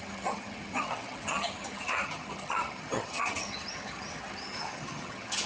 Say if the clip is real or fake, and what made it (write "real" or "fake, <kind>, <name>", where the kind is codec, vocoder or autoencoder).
fake, vocoder, HiFi-GAN